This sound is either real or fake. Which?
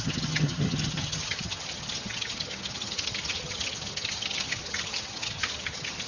fake